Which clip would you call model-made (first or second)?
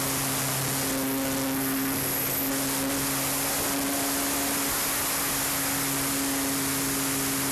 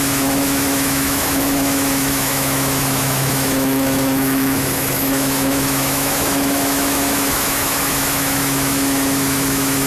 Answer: second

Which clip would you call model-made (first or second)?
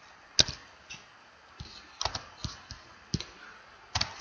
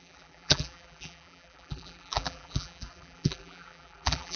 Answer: second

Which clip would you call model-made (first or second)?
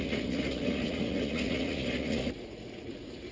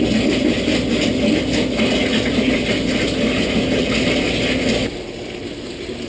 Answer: first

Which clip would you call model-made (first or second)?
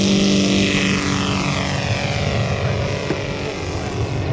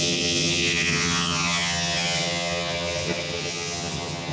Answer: second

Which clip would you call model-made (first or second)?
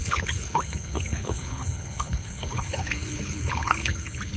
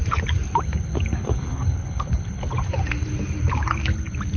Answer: first